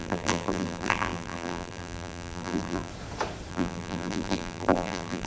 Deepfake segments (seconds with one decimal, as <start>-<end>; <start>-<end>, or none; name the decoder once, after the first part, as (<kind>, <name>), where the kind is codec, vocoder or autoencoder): 0.0-2.9 (vocoder, BigVGAN v2); 3.5-5.3